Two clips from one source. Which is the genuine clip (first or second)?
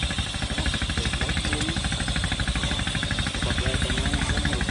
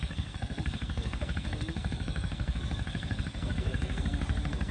first